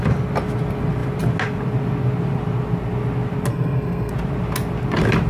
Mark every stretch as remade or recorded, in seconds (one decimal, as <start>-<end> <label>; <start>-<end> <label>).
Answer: 0.0-3.5 recorded; 3.5-4.1 remade; 4.1-5.3 recorded